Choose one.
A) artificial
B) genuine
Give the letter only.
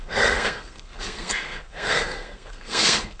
A